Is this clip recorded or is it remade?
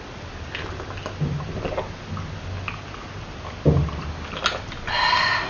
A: recorded